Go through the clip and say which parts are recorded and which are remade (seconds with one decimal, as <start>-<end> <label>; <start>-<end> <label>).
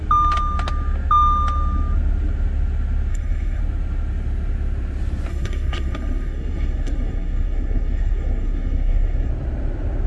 0.0-3.1 recorded; 3.1-3.6 remade; 3.6-5.3 recorded; 5.3-9.3 remade; 9.3-10.1 recorded